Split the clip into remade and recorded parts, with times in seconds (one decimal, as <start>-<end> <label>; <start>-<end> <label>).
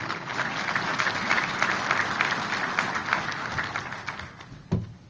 0.0-5.1 recorded